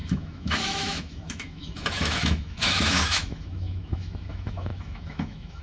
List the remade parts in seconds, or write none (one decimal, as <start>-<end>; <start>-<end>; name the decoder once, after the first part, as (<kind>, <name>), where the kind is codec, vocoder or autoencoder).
0.0-5.6 (autoencoder, DAC-VAE)